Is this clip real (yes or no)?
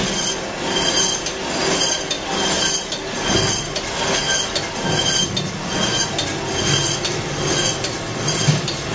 yes